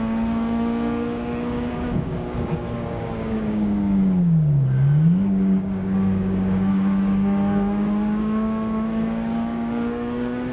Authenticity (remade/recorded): remade